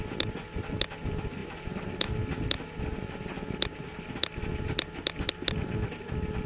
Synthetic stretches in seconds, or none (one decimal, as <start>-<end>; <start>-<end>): none